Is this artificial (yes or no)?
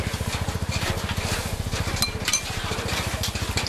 no